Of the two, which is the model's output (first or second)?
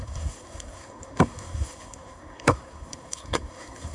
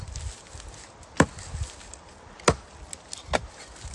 first